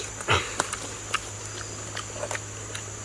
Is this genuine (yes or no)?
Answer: yes